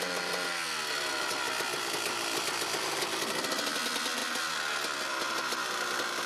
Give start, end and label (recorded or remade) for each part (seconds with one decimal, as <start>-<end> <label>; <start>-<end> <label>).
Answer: 0.0-6.3 recorded